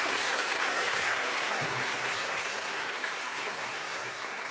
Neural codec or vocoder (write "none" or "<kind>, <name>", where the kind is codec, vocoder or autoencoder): codec, SNAC